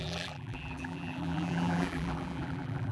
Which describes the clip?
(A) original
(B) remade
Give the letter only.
B